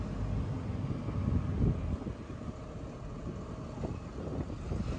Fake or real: real